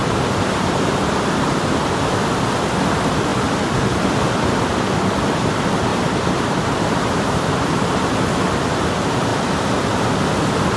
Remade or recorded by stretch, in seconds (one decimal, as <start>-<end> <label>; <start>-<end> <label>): 0.0-0.9 remade; 0.9-5.9 recorded; 5.9-8.0 remade; 8.0-10.8 recorded